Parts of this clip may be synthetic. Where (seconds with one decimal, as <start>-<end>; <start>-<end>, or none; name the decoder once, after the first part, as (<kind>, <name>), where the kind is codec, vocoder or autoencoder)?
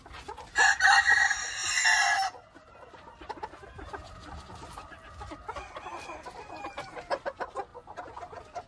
none